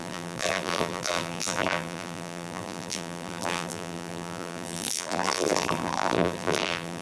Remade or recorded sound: remade